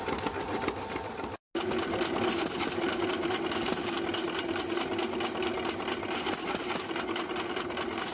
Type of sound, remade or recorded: recorded